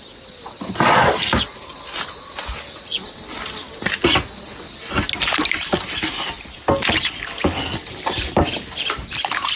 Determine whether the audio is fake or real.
real